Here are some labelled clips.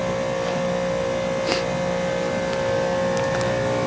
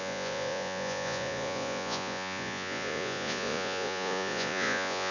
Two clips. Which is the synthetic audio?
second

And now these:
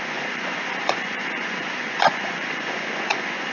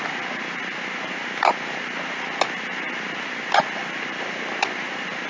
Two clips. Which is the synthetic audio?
first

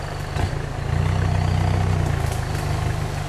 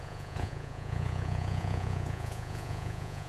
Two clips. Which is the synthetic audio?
second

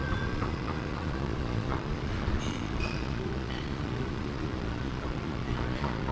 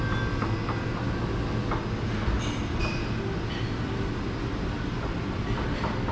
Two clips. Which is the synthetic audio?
first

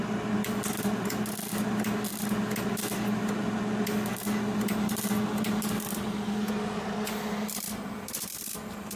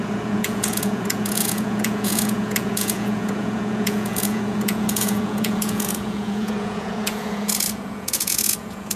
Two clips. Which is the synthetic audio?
second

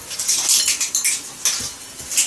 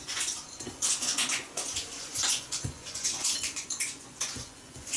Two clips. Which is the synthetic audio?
second